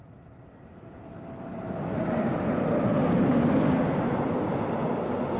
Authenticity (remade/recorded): recorded